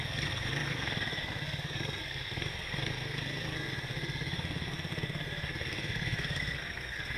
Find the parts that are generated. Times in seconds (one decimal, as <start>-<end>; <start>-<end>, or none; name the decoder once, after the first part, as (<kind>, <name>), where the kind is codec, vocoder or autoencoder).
0.0-7.2 (codec, SNAC)